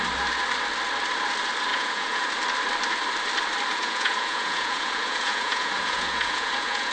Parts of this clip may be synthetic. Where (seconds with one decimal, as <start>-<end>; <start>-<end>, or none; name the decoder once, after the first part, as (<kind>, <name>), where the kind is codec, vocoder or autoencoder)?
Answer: 1.7-2.3 (vocoder, Vocos); 3.7-6.9